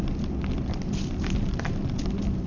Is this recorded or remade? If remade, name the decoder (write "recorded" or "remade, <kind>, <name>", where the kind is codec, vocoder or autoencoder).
recorded